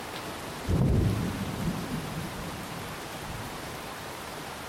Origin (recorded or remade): remade